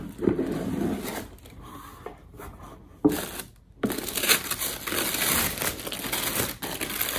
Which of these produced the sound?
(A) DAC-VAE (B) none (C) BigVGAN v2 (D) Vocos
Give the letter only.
B